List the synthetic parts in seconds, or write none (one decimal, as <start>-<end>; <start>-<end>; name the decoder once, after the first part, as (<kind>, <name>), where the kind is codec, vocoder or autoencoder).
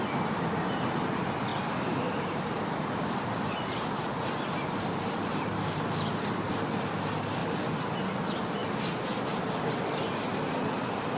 1.5-6.1 (vocoder, BigVGAN v2)